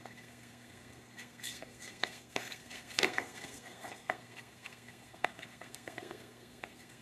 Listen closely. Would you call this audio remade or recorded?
remade